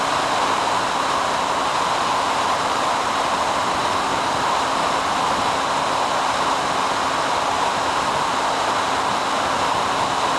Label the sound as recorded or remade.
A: recorded